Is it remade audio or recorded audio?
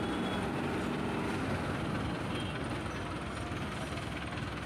recorded